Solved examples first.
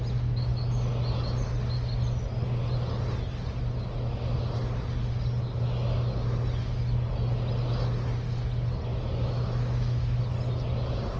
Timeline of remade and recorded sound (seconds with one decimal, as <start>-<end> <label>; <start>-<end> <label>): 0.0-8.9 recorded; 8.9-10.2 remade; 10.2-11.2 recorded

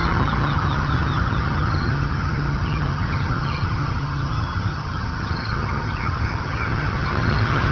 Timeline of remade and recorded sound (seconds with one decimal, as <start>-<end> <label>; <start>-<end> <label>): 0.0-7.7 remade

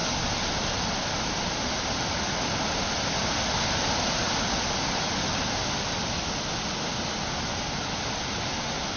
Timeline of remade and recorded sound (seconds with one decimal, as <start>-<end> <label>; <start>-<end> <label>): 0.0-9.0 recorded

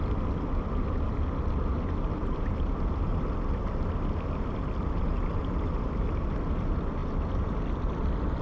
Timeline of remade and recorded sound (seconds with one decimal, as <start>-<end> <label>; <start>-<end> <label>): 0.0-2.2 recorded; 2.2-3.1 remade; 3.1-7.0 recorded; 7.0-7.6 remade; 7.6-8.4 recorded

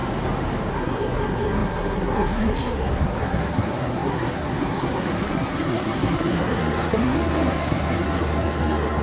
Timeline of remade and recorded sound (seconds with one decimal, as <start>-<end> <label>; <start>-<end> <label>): 0.0-0.7 recorded; 0.7-9.0 remade

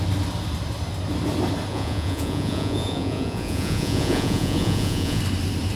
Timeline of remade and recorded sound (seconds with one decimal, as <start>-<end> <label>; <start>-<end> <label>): 0.0-1.7 recorded; 1.7-5.2 remade; 5.2-5.8 recorded

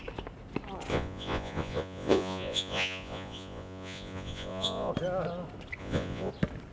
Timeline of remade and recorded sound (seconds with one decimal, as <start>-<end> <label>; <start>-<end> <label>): 0.0-0.9 recorded; 0.9-4.9 remade; 4.9-5.8 recorded; 5.8-6.3 remade; 6.3-6.7 recorded

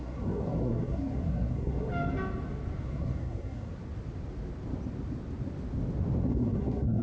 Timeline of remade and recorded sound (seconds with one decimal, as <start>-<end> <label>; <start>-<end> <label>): 0.0-1.9 remade; 1.9-2.8 recorded; 2.8-3.7 remade; 3.7-6.2 recorded; 6.2-7.0 remade